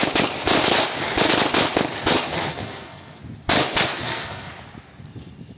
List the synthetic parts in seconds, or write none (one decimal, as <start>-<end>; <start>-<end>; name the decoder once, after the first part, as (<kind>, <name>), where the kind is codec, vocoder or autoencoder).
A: 2.5-3.2 (codec, SNAC); 3.9-4.5